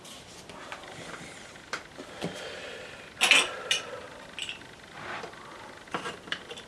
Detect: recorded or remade recorded